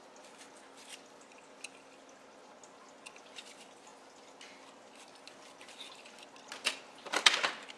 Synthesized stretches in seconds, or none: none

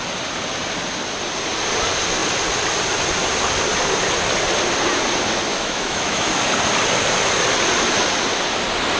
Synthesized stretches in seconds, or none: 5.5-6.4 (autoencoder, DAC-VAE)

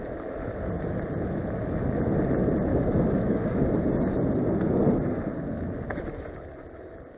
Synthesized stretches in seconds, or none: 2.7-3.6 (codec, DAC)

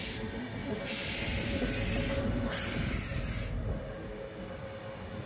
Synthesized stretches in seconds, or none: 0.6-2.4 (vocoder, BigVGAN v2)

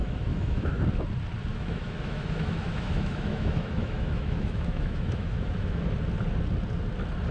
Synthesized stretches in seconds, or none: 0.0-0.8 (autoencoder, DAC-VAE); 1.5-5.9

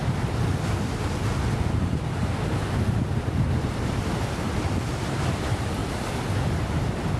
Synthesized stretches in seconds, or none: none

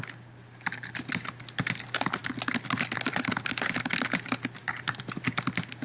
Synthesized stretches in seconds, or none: none